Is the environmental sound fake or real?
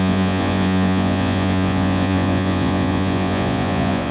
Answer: fake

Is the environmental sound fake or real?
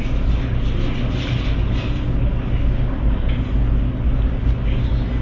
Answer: real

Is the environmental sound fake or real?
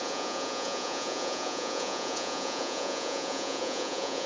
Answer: fake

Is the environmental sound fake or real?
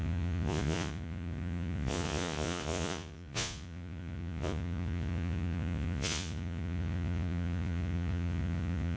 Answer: fake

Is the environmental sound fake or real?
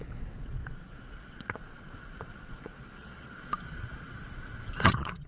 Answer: fake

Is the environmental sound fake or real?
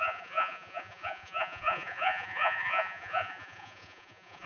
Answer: fake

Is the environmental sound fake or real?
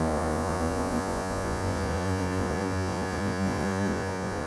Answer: fake